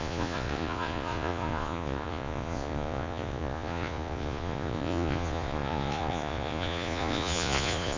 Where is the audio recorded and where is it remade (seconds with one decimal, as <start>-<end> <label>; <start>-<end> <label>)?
0.0-8.0 remade